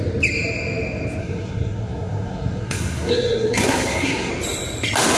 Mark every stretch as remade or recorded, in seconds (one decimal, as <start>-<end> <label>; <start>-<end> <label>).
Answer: 0.0-1.2 recorded; 1.2-4.3 remade; 4.3-5.2 recorded